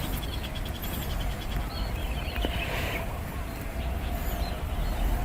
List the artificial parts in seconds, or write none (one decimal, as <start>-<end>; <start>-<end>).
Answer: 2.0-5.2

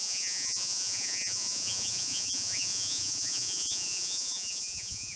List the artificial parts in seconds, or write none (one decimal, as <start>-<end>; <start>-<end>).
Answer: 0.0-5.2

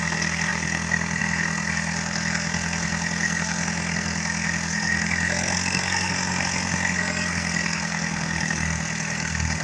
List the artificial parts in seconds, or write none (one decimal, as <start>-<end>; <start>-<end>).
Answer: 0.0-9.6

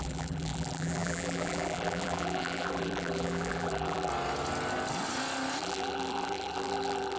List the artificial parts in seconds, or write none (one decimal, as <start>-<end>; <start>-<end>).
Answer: 0.0-4.1; 5.6-7.2

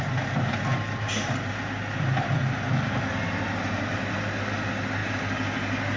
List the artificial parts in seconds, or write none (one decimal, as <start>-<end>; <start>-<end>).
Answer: none

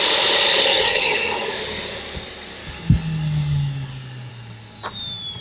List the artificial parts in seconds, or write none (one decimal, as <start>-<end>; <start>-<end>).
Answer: 0.7-1.5; 2.6-4.3